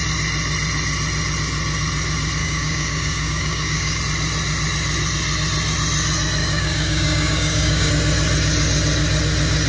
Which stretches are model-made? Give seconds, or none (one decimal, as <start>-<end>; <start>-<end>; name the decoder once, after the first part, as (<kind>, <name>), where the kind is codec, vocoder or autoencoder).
2.4-4.0 (codec, DAC); 6.4-7.9